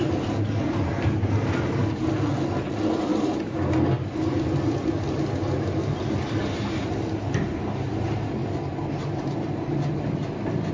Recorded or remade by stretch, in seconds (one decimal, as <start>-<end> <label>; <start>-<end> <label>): 0.0-8.4 recorded; 8.4-10.7 remade